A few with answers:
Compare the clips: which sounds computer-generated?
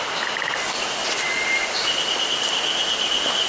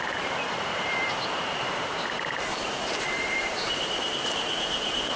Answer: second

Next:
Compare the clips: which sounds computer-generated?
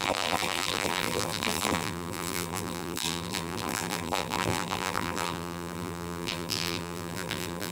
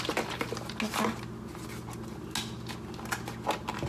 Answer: first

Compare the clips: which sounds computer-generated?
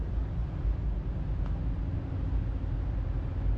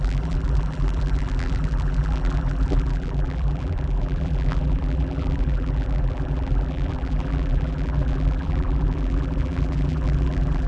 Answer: second